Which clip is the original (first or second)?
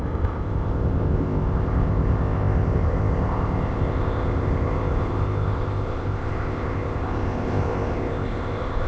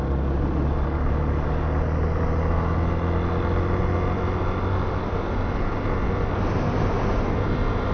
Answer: second